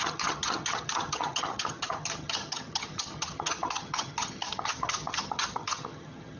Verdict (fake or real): fake